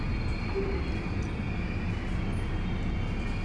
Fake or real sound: real